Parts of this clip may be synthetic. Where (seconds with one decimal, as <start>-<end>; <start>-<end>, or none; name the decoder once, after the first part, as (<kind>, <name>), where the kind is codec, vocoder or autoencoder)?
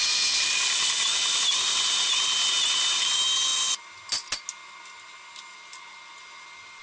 none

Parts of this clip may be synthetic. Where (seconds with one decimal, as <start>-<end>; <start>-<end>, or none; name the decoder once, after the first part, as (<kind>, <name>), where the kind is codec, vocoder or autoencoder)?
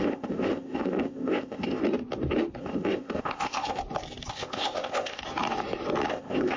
0.0-1.8 (codec, ZipCodec); 2.6-3.8; 4.3-5.2; 6.1-6.6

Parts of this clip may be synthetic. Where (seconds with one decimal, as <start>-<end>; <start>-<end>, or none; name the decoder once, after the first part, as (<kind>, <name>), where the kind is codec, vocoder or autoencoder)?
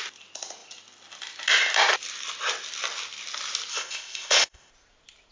3.7-4.7 (codec, ZipCodec)